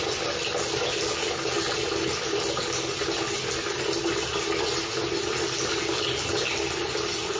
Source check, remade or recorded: recorded